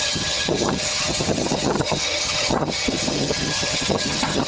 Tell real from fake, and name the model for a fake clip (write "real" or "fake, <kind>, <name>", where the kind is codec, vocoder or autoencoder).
fake, vocoder, HiFi-GAN